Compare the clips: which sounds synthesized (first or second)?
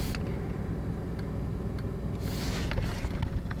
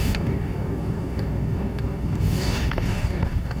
second